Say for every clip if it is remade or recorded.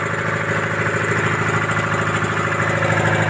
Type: recorded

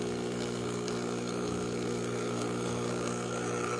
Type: remade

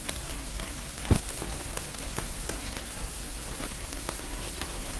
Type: remade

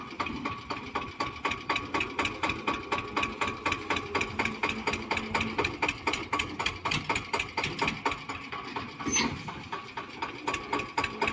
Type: recorded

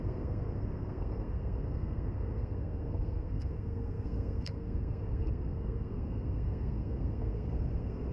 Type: remade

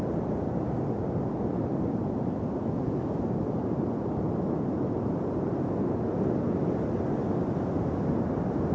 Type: recorded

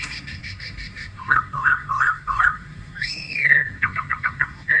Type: remade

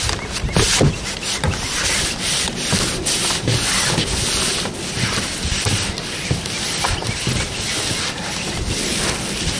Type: recorded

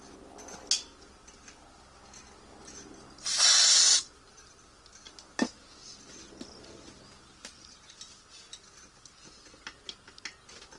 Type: recorded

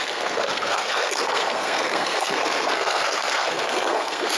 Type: remade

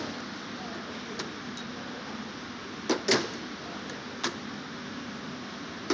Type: recorded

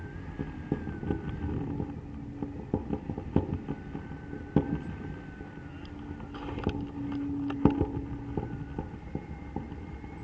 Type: recorded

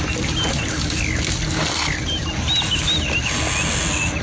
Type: recorded